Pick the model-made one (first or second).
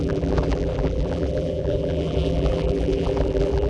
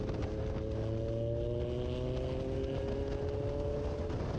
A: first